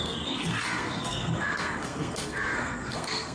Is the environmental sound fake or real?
fake